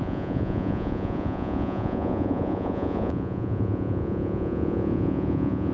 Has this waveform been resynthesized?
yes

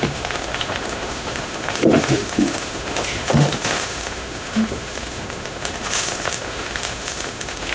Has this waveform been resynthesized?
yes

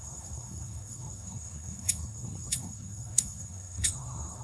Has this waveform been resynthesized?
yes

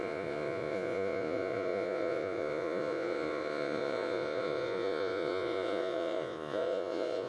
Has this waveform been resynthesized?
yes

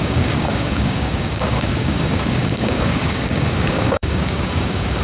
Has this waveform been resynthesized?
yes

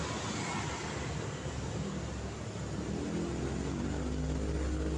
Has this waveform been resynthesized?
no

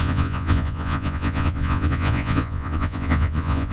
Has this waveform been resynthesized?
yes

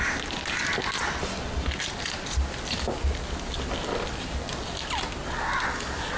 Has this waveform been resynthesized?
no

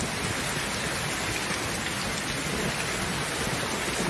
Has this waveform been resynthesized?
no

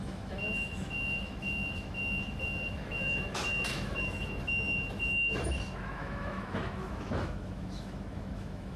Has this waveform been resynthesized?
yes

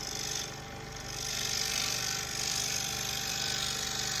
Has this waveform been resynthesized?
yes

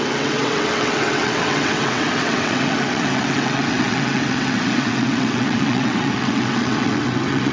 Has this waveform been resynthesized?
yes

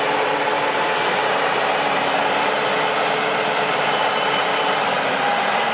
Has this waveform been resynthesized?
yes